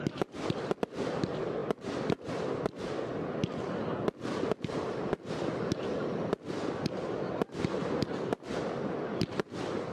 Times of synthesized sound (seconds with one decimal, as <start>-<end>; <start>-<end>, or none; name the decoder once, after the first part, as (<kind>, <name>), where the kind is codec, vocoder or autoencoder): none